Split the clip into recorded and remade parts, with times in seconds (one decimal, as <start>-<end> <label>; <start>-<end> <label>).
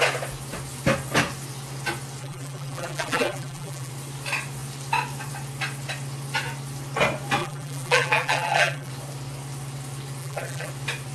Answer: 0.0-2.2 recorded; 2.2-3.9 remade; 3.9-7.4 recorded; 7.4-8.9 remade; 8.9-10.2 recorded; 10.2-10.7 remade; 10.7-11.1 recorded